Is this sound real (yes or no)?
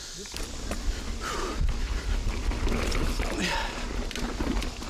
yes